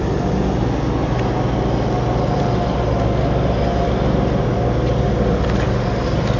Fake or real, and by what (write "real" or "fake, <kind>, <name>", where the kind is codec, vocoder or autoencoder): real